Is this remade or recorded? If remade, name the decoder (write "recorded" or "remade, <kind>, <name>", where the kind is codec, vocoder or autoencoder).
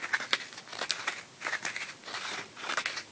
recorded